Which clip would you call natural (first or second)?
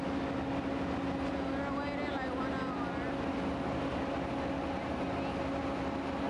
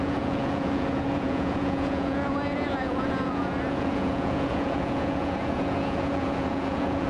first